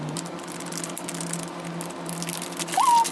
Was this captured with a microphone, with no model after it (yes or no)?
yes